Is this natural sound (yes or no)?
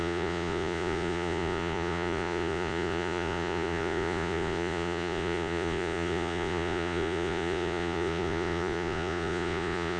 no